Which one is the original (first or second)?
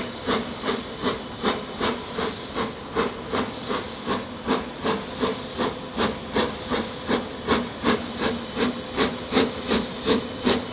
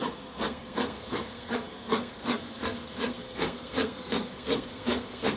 first